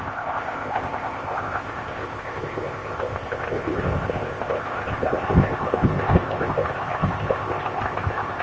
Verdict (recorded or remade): remade